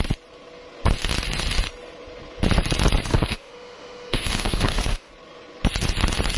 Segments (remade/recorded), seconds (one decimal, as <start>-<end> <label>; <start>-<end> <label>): 0.0-3.1 recorded; 3.1-5.1 remade; 5.1-6.4 recorded

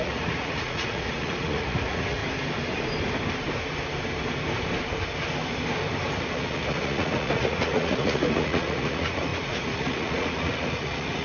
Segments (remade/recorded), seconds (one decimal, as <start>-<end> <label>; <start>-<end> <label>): 0.0-2.2 remade; 2.2-6.2 recorded; 6.2-11.2 remade

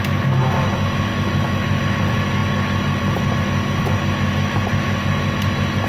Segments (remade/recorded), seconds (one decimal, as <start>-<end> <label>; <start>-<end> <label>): 0.0-5.9 recorded

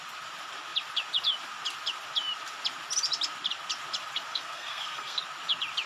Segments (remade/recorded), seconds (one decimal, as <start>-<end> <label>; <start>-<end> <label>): 0.0-4.3 recorded; 4.3-5.2 remade; 5.2-5.9 recorded